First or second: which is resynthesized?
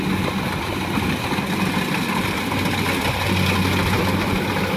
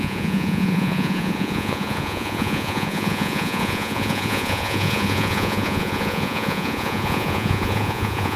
second